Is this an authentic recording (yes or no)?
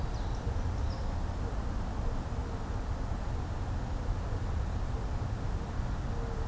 yes